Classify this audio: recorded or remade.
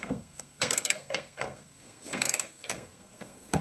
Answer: remade